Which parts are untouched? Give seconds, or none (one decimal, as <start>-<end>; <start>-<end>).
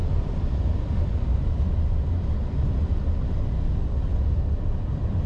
0.7-5.3